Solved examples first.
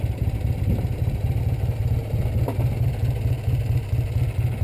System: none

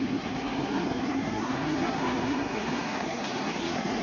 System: codec, SNAC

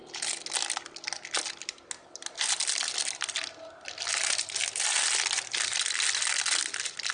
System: none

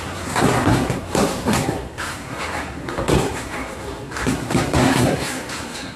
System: codec, SNAC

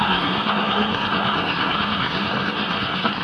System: codec, SNAC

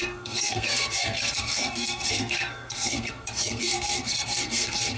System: codec, SNAC